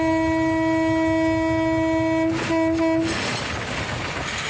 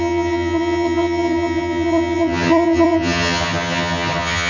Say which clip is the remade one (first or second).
second